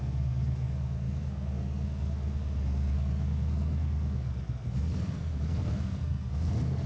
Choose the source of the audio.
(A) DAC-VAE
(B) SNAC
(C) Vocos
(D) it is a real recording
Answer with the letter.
B